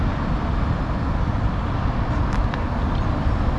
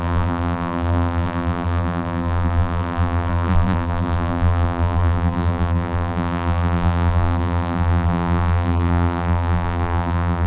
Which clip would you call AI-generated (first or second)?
second